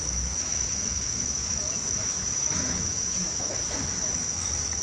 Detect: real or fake fake